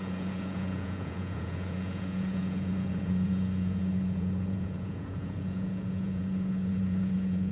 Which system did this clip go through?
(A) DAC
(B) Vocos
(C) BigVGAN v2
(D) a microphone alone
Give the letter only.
B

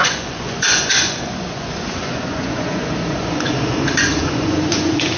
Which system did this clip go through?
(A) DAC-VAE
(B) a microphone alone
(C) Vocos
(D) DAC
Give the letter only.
C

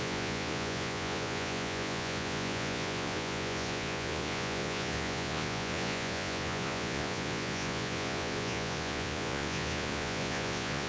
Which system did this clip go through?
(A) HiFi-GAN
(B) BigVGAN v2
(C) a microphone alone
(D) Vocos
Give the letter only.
D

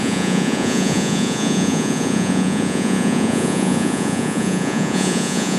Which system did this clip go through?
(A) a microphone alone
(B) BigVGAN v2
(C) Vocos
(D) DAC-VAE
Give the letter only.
C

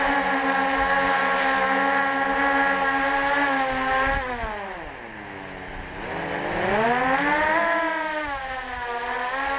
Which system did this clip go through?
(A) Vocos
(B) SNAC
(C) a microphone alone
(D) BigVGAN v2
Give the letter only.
C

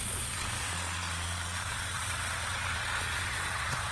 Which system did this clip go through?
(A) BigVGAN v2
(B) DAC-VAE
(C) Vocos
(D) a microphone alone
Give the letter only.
C